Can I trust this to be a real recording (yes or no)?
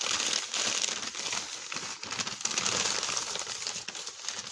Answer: yes